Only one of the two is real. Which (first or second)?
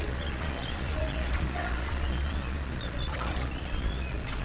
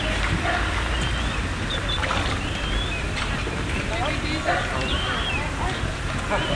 second